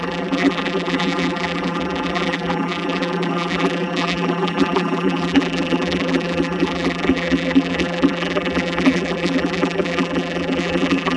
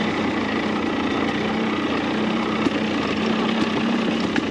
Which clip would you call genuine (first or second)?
second